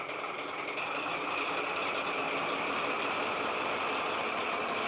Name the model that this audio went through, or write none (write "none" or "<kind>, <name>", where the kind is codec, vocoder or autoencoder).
none